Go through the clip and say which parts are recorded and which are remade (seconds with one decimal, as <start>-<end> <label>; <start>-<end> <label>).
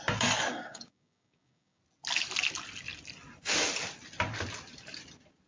0.0-0.5 recorded; 0.5-1.8 remade; 1.8-5.5 recorded